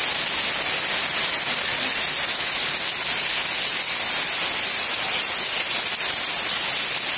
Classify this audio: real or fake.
real